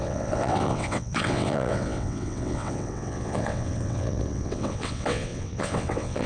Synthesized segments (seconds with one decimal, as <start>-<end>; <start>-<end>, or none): 0.0-6.3